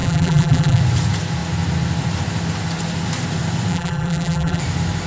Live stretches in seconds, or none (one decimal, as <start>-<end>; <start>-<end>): 0.8-3.7; 4.6-5.1